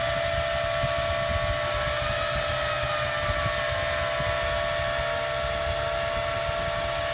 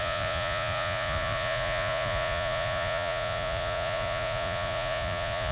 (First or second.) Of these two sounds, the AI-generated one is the second